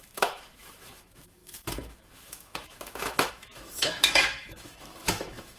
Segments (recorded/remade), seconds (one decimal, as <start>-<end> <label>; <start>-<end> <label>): 0.0-5.6 remade